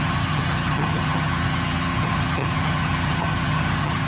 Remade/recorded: remade